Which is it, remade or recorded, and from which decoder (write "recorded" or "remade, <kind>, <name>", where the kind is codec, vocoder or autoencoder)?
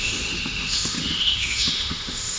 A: remade, autoencoder, DAC-VAE